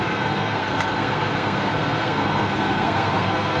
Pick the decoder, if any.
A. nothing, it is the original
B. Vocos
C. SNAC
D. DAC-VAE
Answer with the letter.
C